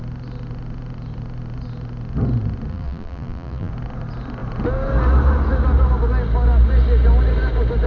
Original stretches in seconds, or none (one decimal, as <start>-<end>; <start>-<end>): 0.0-2.7; 3.7-7.9